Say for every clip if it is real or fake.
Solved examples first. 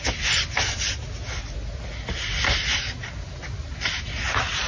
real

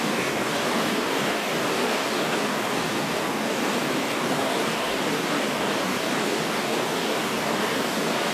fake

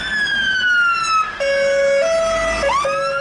real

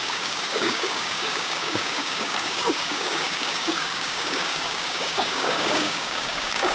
fake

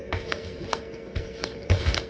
fake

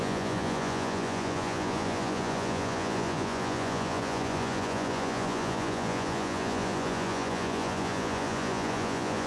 fake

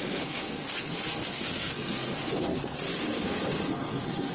fake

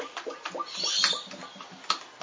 real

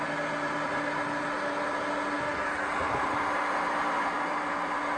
real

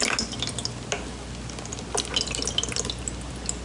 real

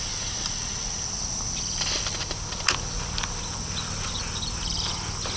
real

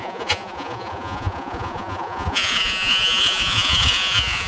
fake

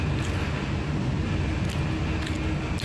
real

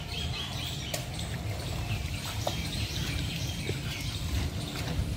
real